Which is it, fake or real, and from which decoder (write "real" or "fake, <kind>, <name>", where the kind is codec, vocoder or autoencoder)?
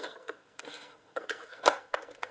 fake, codec, SNAC